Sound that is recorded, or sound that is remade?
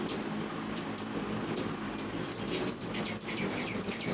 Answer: recorded